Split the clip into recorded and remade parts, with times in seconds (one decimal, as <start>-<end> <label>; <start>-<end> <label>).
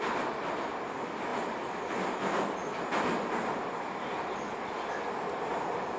0.0-6.0 recorded